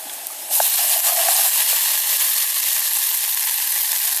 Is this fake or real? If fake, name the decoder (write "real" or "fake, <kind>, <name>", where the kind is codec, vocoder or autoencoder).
real